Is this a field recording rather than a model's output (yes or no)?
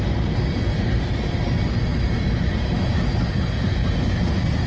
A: yes